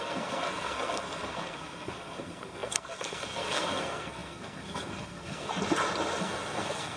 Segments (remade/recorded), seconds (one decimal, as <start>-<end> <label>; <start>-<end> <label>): 0.0-5.5 remade; 5.5-6.2 recorded; 6.2-7.0 remade